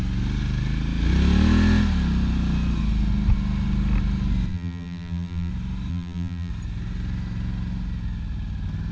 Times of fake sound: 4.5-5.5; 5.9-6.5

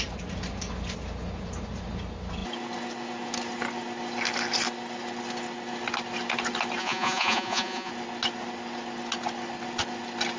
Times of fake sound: 6.8-7.9